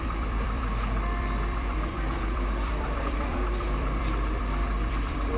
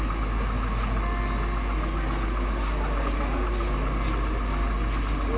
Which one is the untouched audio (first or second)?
second